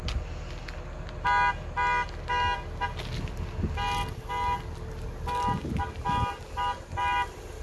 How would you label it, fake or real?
real